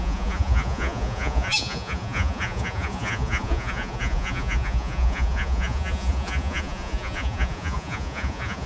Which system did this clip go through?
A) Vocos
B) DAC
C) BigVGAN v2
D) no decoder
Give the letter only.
A